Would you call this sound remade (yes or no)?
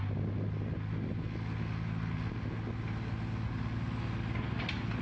no